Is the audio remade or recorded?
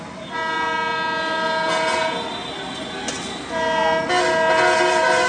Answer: recorded